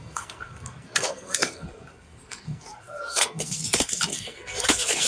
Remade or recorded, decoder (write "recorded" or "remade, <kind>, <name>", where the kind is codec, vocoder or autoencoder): remade, codec, SNAC